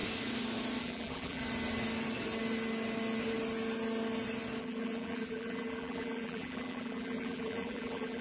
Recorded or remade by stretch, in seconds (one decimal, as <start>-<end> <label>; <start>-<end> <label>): 0.0-0.8 recorded; 0.8-1.4 remade; 1.4-4.6 recorded; 4.6-8.2 remade